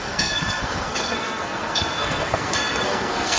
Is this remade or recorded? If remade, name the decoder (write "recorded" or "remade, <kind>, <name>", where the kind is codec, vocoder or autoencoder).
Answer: remade, codec, SNAC